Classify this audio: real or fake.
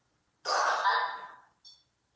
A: real